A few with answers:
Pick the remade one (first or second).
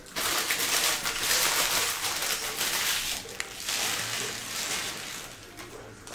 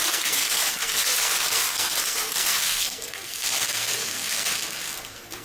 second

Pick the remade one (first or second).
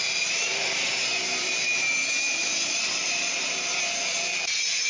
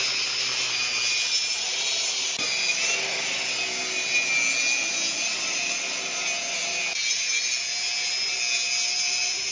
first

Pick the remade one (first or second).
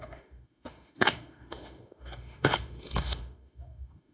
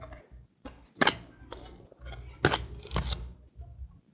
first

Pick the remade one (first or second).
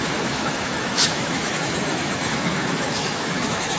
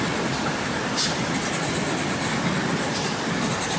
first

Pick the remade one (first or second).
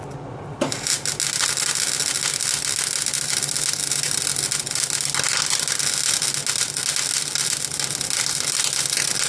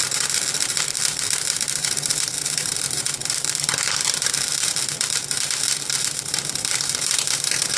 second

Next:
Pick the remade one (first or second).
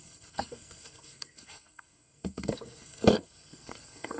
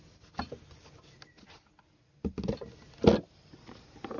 first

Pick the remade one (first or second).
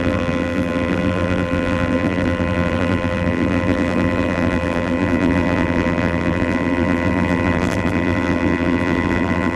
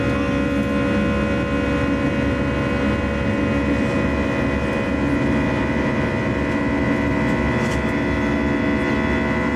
first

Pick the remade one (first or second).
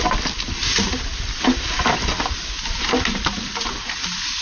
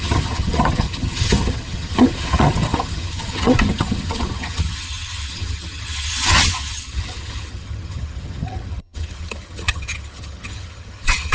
second